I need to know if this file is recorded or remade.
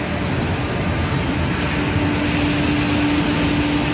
recorded